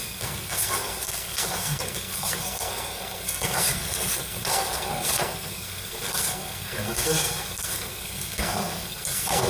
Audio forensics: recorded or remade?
remade